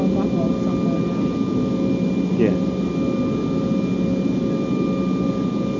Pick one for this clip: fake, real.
real